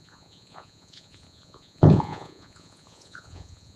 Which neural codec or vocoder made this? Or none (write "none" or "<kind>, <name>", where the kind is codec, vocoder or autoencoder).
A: vocoder, Vocos